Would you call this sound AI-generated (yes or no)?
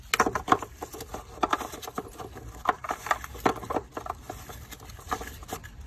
no